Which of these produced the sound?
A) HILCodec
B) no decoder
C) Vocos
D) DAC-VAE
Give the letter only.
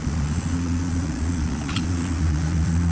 C